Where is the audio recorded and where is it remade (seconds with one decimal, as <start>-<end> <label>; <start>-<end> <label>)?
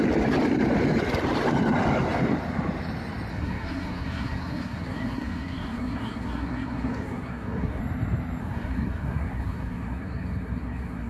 0.0-3.3 recorded; 3.3-7.8 remade; 7.8-8.4 recorded; 8.4-11.1 remade